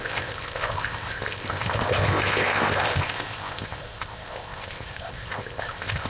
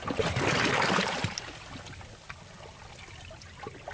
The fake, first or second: first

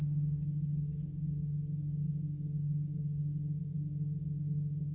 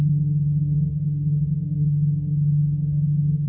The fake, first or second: second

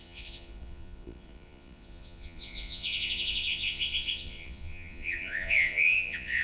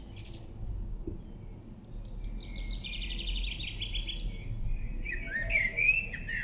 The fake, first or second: first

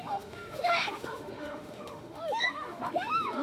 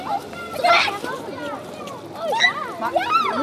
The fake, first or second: first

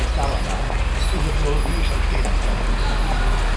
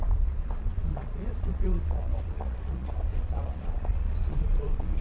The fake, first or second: second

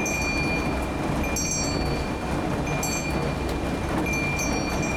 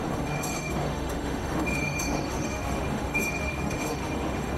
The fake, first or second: second